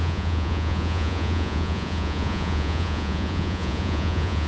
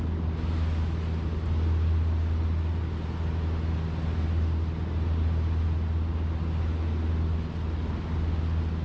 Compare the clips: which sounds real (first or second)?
second